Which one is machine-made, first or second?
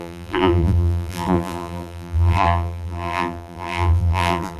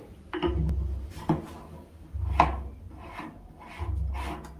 first